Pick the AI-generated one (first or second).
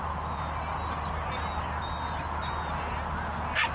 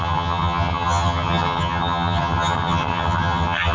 second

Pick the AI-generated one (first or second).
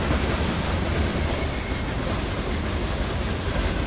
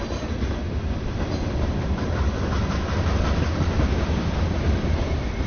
second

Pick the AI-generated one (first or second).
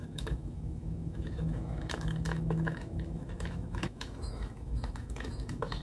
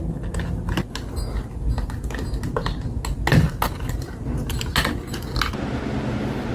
first